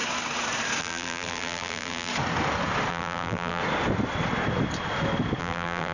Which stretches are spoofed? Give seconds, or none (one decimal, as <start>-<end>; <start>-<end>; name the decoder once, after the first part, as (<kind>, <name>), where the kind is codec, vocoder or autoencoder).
0.8-2.1 (vocoder, BigVGAN v2); 2.9-3.6; 5.4-5.9